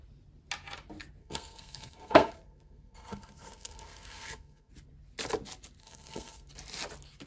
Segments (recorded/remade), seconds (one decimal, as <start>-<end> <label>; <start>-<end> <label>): 0.0-1.2 recorded; 1.2-4.7 remade; 4.7-5.8 recorded; 5.8-6.5 remade; 6.5-7.3 recorded